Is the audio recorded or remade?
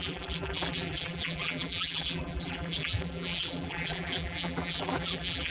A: remade